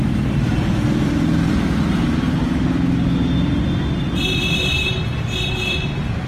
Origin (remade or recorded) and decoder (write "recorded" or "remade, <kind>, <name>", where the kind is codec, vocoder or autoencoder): recorded